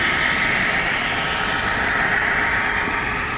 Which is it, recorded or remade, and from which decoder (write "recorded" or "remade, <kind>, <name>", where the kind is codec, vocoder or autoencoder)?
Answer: remade, vocoder, BigVGAN v2